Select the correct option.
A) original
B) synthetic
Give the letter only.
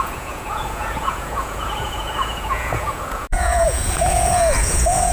B